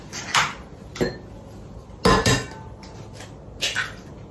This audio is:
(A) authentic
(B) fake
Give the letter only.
A